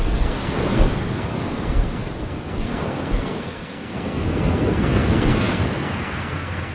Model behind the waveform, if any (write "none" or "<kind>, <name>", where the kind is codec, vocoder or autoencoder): codec, SNAC